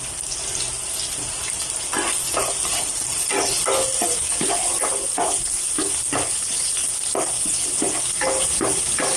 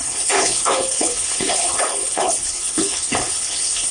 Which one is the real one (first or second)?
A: first